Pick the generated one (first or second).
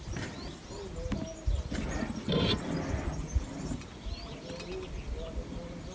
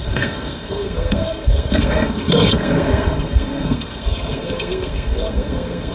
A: second